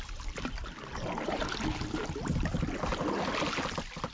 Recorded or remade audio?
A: recorded